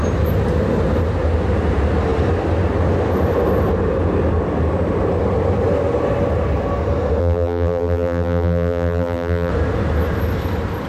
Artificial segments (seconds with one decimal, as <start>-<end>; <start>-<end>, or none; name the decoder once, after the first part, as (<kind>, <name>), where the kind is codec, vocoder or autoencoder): 7.2-9.5 (vocoder, BigVGAN v2)